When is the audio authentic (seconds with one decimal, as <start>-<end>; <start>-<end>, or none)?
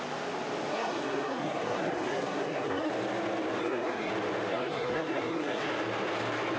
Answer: 0.0-0.7; 2.9-3.6; 4.1-4.5; 5.7-6.6